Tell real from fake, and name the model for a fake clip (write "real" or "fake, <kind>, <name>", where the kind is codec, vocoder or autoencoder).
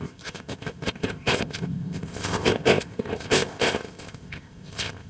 fake, codec, ZipCodec